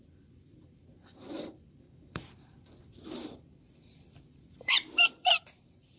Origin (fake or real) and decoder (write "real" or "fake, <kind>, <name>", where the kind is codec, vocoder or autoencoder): fake, vocoder, BigVGAN v2